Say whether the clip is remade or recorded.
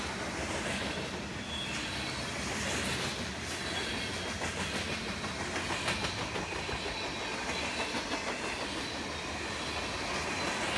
recorded